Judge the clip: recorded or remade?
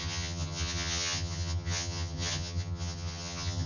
remade